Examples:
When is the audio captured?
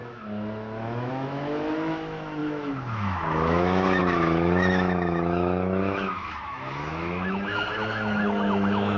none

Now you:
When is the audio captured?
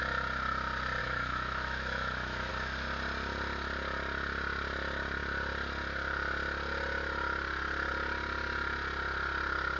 0.0-1.0; 2.5-9.8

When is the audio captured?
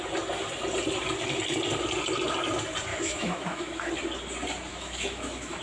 0.0-2.9; 3.9-4.7